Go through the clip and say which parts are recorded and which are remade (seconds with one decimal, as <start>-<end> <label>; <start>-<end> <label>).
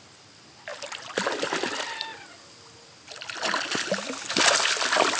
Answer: 0.0-5.2 recorded